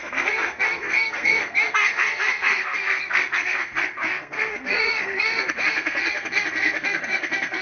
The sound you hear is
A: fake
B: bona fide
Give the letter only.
A